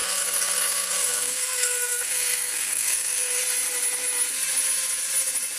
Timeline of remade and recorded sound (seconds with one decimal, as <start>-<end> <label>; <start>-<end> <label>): 0.0-3.4 remade; 3.4-5.6 recorded